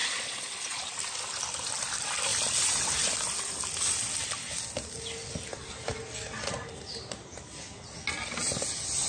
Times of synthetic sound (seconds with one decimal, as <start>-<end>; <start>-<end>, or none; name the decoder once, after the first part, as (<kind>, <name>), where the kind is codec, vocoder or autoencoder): 0.0-0.8 (vocoder, Vocos)

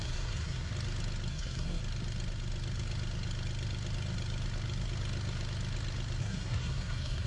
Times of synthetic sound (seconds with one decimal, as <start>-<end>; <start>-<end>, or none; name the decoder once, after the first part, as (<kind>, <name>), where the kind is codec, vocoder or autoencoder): 0.0-0.7 (codec, SNAC); 1.3-1.8; 6.2-7.3

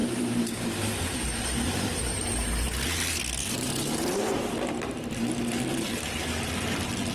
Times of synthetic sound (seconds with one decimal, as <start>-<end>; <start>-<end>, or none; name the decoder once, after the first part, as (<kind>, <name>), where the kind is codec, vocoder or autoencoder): 0.0-2.0 (vocoder, BigVGAN v2); 3.4-6.5

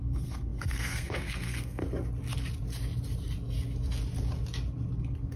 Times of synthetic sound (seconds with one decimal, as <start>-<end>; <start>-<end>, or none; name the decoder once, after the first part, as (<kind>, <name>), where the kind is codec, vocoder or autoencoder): 0.0-1.8 (codec, SNAC); 5.0-5.4

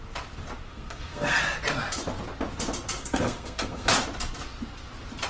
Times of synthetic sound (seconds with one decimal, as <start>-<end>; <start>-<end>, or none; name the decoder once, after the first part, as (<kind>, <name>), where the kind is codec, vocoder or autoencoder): 0.7-1.4 (codec, SNAC); 3.0-3.9